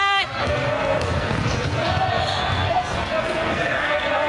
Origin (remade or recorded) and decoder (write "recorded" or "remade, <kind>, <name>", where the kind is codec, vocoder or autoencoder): remade, codec, SNAC